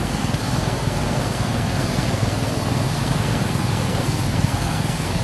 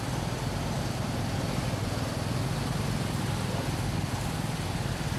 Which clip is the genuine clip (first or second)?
second